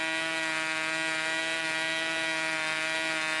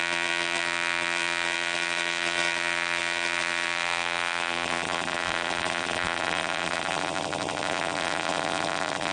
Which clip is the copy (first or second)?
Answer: second